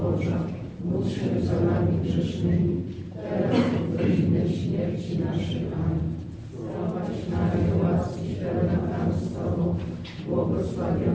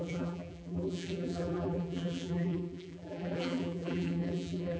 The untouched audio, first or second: first